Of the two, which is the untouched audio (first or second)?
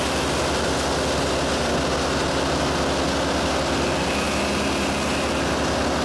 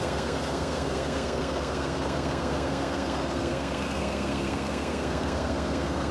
first